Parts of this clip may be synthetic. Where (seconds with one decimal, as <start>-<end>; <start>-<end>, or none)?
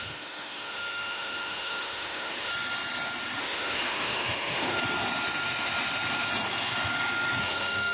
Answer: 0.0-2.5; 3.4-4.8; 7.4-7.9